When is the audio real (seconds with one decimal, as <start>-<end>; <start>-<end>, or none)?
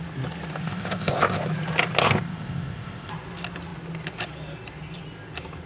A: 0.0-0.6; 1.4-2.0; 3.1-5.7